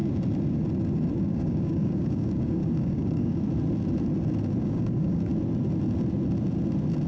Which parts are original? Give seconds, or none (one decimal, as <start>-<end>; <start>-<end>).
0.0-1.3; 3.4-4.6; 5.2-7.1